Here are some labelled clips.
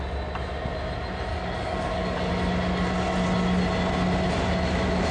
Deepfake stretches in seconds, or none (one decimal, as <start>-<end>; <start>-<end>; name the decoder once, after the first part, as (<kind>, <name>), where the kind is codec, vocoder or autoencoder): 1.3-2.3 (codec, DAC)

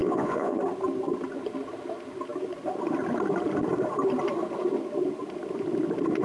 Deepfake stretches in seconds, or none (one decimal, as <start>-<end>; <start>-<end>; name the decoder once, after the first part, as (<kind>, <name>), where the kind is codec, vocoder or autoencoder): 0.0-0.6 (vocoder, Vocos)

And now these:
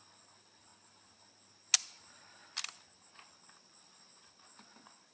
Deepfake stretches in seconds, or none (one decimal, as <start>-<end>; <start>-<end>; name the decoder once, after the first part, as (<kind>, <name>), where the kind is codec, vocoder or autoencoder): none

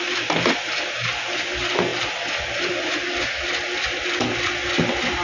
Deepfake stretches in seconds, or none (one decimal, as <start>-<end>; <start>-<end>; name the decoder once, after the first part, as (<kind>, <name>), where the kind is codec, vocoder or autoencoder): none